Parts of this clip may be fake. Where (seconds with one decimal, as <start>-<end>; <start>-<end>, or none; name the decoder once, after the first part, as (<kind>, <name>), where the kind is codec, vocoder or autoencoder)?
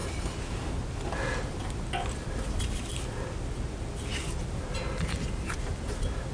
none